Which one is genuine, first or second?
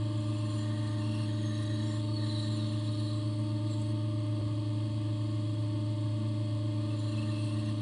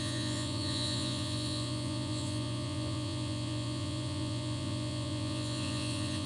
first